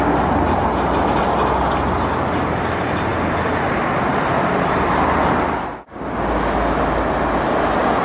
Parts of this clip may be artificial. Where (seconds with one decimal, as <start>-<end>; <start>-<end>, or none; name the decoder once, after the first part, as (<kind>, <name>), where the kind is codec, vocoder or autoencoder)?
none